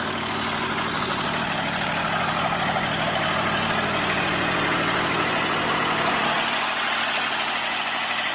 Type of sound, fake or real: fake